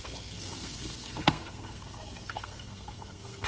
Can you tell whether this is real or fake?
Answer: fake